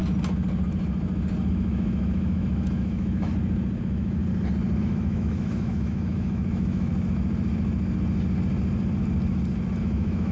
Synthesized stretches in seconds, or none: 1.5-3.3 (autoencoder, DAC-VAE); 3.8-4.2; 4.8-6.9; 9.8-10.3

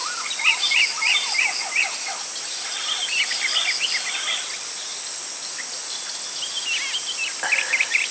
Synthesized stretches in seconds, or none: none

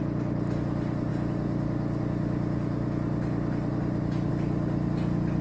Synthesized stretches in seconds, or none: none

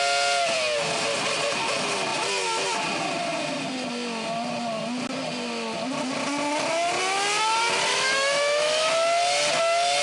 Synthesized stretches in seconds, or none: 7.9-8.9 (autoencoder, DAC-VAE)

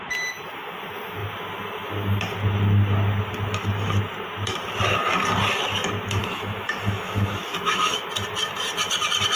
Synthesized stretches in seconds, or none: 6.2-8.0 (autoencoder, DAC-VAE)